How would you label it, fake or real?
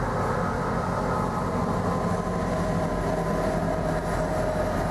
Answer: real